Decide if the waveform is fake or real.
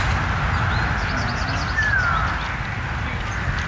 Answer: real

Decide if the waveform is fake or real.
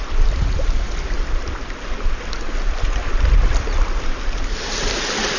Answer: real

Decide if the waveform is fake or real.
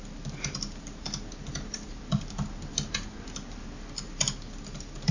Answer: real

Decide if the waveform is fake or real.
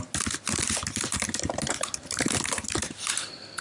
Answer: real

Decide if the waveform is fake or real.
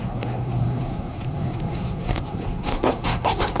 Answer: fake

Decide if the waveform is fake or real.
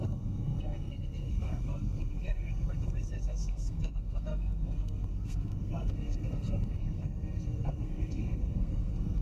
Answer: fake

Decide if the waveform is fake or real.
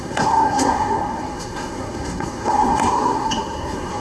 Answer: fake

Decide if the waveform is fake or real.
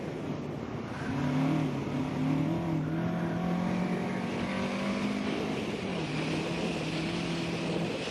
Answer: real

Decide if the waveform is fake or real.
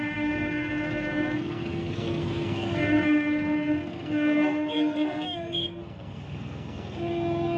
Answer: fake